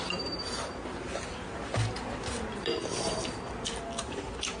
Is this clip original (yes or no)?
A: yes